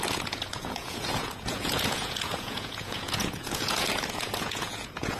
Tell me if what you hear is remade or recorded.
remade